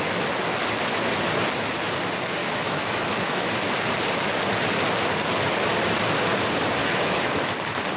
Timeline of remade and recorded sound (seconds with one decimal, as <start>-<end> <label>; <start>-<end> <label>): 0.0-2.4 recorded; 2.4-3.5 remade; 3.5-6.8 recorded; 6.8-7.5 remade; 7.5-8.0 recorded